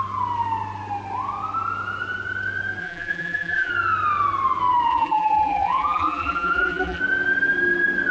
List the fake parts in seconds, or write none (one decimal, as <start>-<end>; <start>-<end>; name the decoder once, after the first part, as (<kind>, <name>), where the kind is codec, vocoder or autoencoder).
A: 2.8-3.7 (vocoder, BigVGAN v2); 4.9-7.0